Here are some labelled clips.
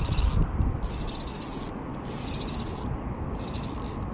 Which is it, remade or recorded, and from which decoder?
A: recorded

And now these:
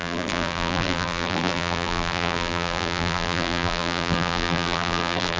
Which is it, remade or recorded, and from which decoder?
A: remade, vocoder, BigVGAN v2